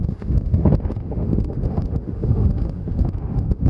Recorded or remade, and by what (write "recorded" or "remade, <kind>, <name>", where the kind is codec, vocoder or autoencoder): remade, autoencoder, DAC-VAE